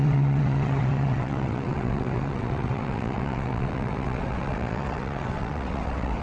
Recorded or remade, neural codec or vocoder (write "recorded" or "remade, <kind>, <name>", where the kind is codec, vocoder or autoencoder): remade, vocoder, WaveNeXt